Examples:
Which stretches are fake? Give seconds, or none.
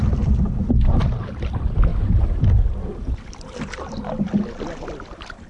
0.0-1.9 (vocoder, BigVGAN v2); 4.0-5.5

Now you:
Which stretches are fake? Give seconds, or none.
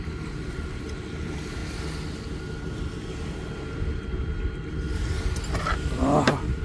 0.0-1.6 (vocoder, BigVGAN v2); 5.6-6.6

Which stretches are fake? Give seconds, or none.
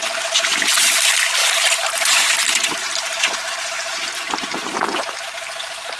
1.4-5.0 (vocoder, BigVGAN v2)